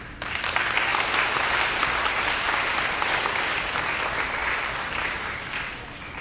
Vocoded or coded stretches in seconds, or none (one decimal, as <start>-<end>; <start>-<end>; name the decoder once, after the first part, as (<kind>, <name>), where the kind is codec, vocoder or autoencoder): none